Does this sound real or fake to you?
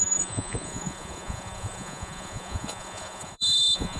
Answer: fake